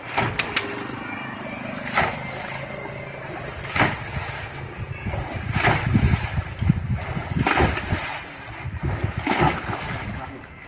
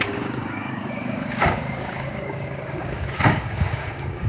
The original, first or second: first